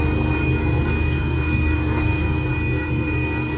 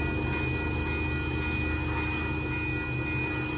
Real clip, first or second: second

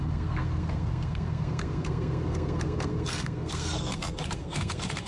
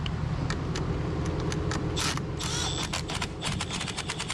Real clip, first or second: second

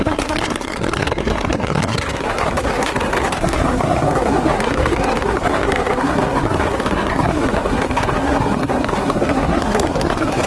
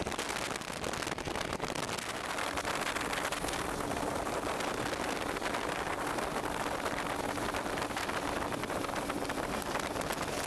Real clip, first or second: second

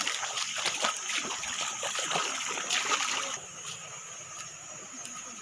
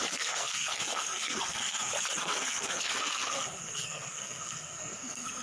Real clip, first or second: first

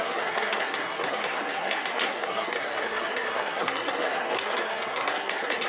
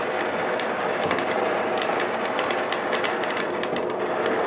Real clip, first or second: second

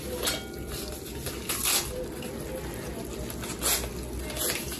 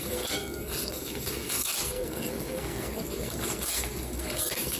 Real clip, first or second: first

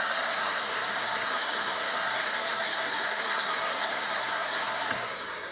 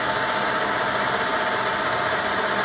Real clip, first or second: second